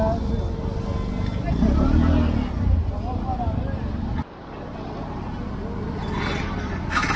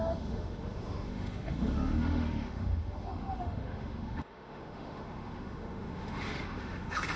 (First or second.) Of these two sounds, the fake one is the second